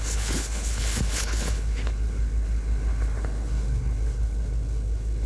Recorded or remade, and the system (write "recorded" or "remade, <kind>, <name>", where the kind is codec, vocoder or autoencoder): remade, codec, HILCodec